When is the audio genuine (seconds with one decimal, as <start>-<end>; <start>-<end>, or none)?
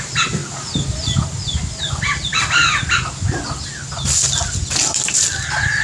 0.0-5.8